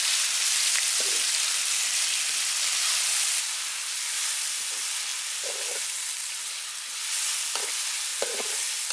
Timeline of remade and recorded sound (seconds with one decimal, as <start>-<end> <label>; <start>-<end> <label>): 0.0-8.9 recorded